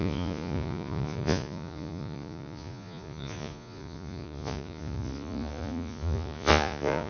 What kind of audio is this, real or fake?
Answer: fake